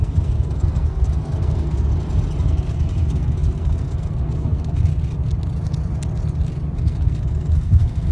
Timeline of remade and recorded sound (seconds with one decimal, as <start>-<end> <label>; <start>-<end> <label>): 0.0-1.9 remade; 1.9-2.4 recorded; 2.4-4.9 remade; 4.9-6.8 recorded; 6.8-8.1 remade